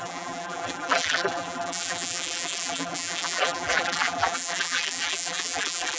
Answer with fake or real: fake